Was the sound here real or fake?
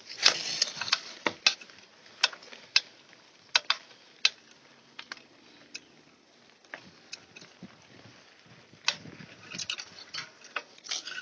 real